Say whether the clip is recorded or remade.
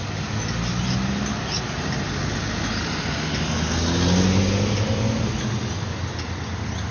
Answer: recorded